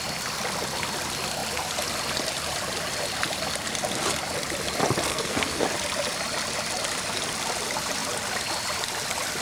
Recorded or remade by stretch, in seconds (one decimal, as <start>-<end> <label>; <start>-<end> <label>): 0.0-5.1 recorded; 5.1-5.6 remade; 5.6-9.4 recorded